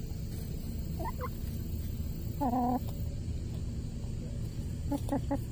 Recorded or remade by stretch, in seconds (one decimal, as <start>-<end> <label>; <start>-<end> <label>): 0.0-5.5 recorded

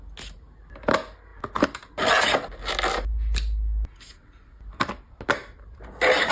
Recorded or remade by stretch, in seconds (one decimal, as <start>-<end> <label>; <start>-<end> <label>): 0.0-6.3 recorded

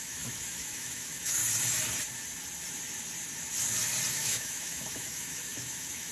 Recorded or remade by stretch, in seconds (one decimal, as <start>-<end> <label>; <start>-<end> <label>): 0.0-1.4 remade; 1.4-4.1 recorded; 4.1-6.1 remade

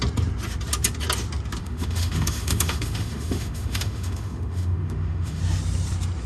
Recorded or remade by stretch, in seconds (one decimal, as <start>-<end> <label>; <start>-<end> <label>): 0.0-1.6 recorded; 1.6-5.4 remade; 5.4-6.3 recorded

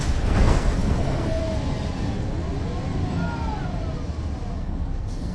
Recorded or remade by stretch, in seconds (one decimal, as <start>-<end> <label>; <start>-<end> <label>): 0.0-1.4 remade; 1.4-4.6 recorded; 4.6-5.3 remade

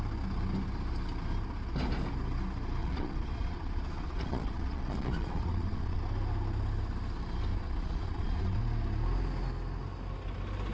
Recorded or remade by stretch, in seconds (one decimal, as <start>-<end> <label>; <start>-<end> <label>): 0.0-2.8 recorded; 2.8-6.0 remade; 6.0-7.5 recorded; 7.5-8.6 remade; 8.6-10.7 recorded

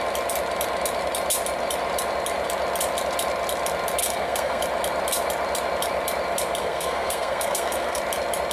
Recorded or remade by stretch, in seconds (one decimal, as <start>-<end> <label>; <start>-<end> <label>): 0.0-4.0 recorded; 4.0-4.6 remade; 4.6-6.6 recorded; 6.6-8.0 remade; 8.0-8.5 recorded

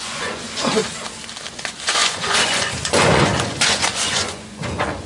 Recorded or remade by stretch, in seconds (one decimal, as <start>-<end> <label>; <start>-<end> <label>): 0.0-0.8 remade; 0.8-1.5 recorded; 1.5-5.1 remade